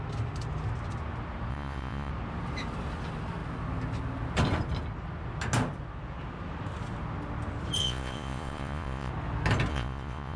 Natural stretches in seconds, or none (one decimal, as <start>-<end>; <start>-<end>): 0.0-1.5; 2.1-7.8; 9.1-9.7